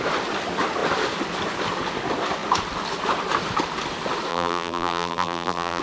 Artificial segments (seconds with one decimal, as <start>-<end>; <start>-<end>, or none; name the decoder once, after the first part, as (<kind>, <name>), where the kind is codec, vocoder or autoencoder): 4.3-5.8 (vocoder, BigVGAN v2)